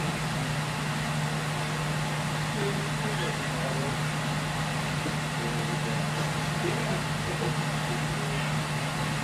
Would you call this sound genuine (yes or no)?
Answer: yes